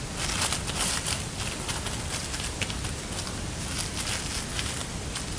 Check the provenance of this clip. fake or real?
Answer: real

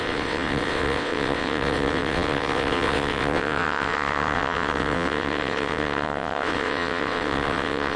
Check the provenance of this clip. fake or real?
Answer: fake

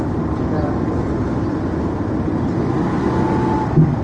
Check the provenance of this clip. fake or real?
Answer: real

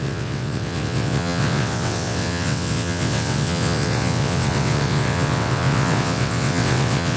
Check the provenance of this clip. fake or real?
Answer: fake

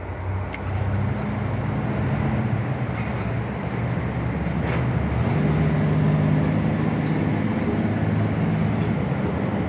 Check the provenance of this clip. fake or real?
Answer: real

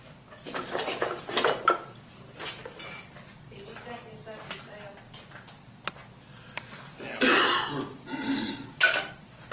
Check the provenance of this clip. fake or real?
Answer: real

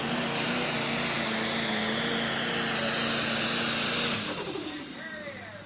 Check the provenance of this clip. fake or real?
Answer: real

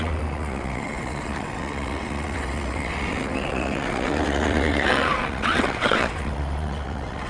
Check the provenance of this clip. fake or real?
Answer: fake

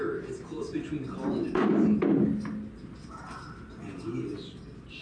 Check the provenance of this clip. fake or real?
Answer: real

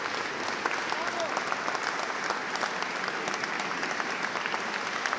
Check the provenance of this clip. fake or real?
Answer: real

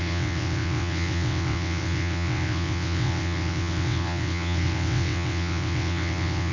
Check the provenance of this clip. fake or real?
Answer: fake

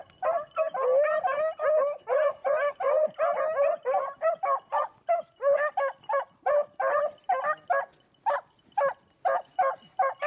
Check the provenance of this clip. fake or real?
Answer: real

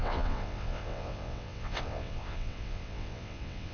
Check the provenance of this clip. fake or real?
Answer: fake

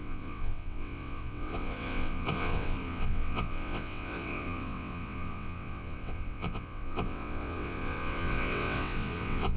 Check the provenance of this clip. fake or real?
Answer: fake